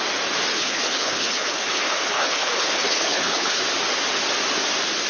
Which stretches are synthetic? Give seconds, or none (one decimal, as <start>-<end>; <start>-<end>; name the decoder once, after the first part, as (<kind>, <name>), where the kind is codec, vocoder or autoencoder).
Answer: 0.5-3.6 (codec, HILCodec)

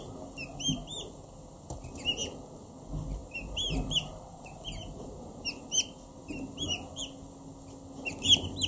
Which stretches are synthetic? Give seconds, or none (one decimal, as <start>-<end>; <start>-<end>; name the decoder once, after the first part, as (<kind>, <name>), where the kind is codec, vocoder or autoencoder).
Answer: none

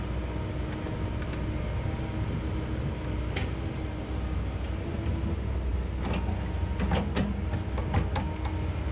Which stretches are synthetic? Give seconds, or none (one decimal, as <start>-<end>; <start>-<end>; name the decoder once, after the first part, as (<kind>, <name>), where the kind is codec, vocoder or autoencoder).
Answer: none

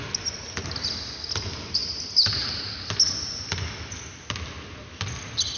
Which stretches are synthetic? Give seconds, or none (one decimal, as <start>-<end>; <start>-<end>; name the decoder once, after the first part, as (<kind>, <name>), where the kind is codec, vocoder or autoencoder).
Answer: none

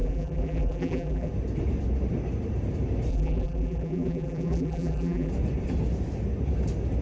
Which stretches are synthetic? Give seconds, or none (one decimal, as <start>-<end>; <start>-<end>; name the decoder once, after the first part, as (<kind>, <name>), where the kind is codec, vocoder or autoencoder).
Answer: 0.0-1.3 (vocoder, BigVGAN v2); 3.1-5.3

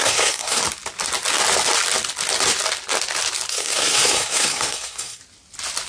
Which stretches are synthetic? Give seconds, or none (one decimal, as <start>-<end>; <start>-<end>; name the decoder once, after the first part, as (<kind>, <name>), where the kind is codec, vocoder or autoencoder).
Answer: 0.0-0.6 (codec, SNAC); 3.5-5.2

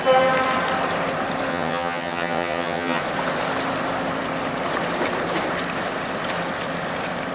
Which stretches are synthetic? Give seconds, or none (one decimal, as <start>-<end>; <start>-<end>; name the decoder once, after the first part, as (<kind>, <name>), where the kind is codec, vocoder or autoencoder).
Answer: 1.5-3.0 (vocoder, HiFi-GAN)